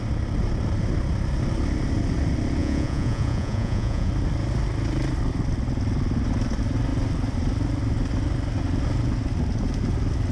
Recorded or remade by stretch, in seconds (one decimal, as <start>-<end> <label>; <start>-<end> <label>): 0.0-2.6 recorded; 2.6-4.1 remade; 4.1-10.3 recorded